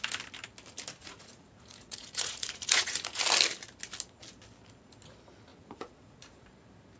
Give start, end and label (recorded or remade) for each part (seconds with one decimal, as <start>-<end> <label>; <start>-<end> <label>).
0.0-1.0 recorded; 1.0-3.2 remade; 3.2-5.5 recorded; 5.5-6.5 remade; 6.5-7.0 recorded